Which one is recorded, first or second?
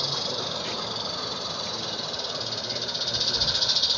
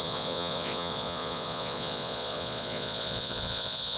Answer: first